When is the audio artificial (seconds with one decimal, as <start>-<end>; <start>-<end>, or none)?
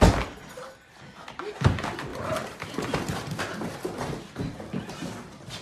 2.1-3.4